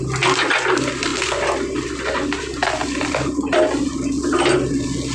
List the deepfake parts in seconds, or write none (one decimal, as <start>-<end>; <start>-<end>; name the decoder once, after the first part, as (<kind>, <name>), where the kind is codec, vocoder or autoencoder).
none